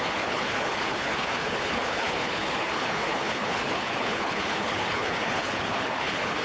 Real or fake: fake